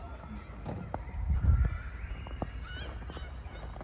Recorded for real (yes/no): yes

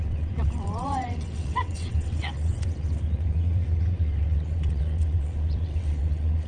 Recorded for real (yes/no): no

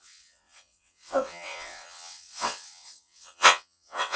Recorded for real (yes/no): no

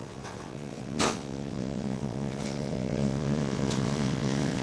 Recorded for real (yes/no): no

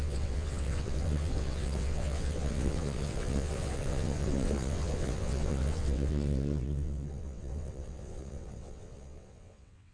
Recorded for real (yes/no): no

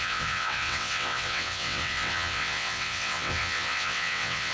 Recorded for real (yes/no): no